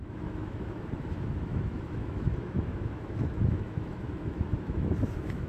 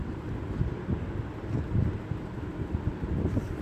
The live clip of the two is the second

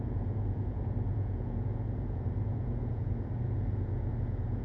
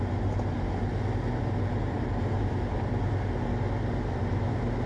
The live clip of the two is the second